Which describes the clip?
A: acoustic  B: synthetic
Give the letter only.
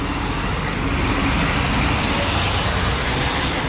A